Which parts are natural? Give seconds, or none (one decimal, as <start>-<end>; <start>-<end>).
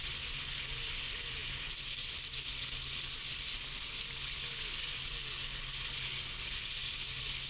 0.0-7.5